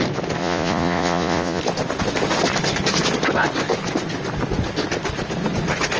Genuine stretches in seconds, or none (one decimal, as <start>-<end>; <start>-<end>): 0.0-0.4; 1.6-6.0